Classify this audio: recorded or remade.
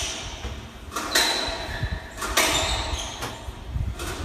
recorded